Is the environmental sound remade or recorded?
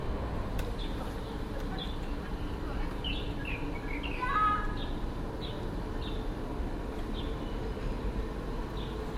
recorded